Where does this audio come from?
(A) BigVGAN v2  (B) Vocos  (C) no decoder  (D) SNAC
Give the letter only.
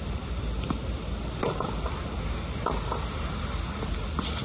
C